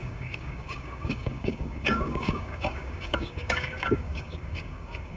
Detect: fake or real fake